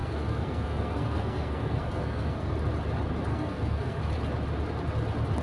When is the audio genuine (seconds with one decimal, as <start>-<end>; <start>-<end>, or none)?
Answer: 2.6-3.3; 4.0-5.4